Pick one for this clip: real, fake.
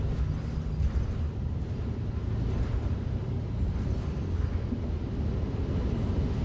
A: real